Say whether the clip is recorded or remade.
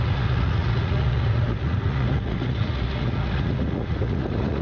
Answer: remade